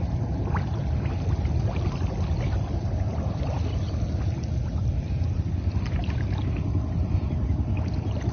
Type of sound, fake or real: real